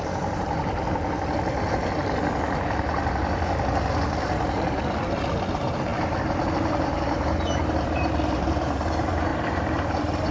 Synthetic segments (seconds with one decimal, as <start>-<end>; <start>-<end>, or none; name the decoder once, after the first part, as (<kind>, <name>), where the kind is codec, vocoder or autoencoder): 0.0-0.6 (vocoder, BigVGAN v2); 5.5-10.3